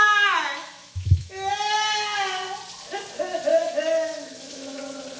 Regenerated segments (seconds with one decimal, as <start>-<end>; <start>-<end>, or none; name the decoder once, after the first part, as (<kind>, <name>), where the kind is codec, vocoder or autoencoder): 0.6-1.5 (autoencoder, DAC-VAE); 3.5-4.8